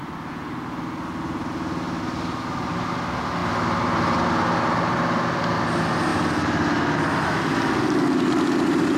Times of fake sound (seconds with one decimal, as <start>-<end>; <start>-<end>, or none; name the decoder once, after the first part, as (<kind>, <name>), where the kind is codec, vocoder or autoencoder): none